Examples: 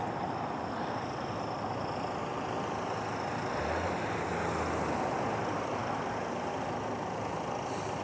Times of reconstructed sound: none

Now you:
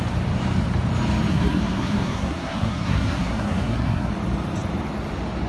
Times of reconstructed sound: 1.3-4.1 (codec, SNAC)